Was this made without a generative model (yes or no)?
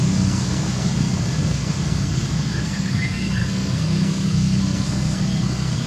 no